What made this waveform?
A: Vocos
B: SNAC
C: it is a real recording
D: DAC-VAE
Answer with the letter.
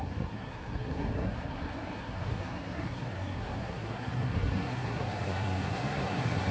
B